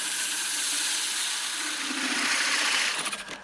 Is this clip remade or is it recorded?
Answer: remade